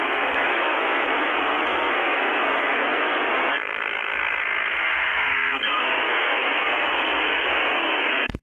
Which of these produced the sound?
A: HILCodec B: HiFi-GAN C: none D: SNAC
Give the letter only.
D